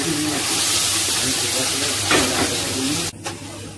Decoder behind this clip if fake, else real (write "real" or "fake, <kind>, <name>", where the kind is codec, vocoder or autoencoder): real